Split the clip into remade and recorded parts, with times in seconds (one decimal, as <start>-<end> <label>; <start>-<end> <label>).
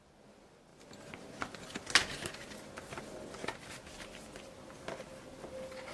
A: 0.0-5.9 recorded